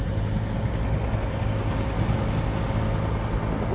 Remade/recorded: recorded